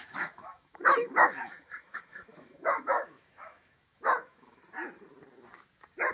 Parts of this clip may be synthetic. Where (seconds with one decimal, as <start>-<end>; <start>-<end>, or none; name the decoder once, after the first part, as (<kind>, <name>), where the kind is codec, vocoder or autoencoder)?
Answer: 0.0-4.6 (autoencoder, DAC-VAE)